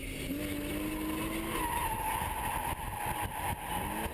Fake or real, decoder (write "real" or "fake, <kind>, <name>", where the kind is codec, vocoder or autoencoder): real